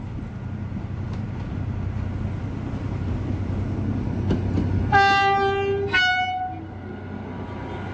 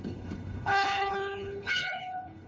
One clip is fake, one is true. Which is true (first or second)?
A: first